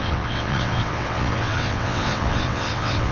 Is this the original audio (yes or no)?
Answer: no